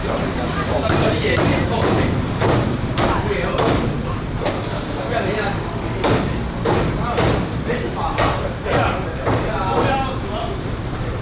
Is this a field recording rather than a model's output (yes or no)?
no